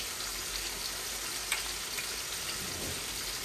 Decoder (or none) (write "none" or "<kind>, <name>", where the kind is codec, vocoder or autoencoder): none